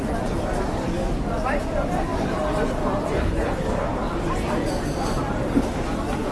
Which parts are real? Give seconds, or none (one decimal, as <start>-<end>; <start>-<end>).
0.0-2.1; 3.5-4.0; 5.3-6.3